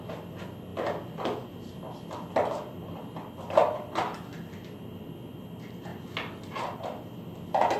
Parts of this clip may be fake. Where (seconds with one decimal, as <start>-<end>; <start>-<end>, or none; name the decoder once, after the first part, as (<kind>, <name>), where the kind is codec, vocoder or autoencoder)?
none